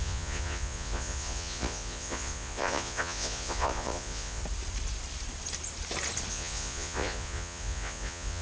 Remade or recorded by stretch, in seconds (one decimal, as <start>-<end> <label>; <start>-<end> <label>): 0.0-4.4 remade; 4.4-6.3 recorded; 6.3-8.4 remade